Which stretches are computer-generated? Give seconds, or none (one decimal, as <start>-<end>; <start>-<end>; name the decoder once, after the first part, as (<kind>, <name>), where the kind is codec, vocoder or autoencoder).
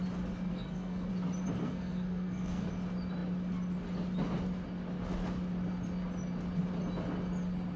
0.5-1.1 (codec, SNAC); 1.6-2.7